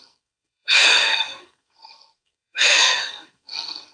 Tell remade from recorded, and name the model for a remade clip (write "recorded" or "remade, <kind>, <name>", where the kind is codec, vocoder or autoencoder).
remade, codec, SNAC